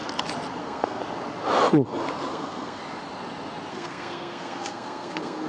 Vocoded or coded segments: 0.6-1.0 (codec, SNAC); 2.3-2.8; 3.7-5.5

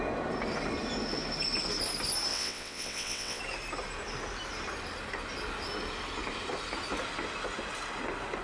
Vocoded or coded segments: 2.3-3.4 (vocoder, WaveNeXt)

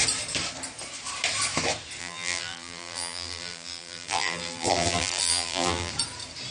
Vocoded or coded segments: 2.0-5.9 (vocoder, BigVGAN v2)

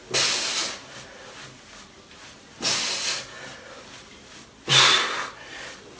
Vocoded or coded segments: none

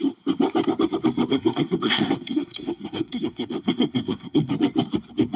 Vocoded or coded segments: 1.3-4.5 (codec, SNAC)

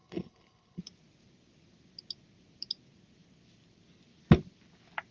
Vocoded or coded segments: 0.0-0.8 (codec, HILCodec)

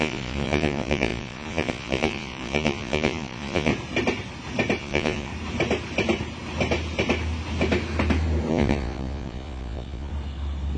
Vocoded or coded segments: 0.0-3.7 (vocoder, Vocos); 4.8-5.3; 8.5-10.1

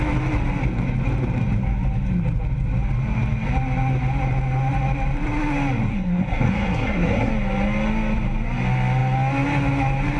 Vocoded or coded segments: 5.9-7.3 (codec, SNAC)